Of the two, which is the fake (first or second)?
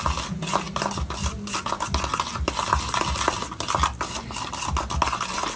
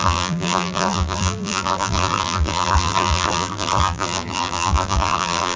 second